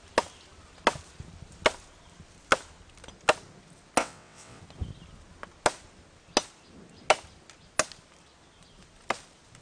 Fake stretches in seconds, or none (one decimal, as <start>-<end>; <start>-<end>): 4.0-4.6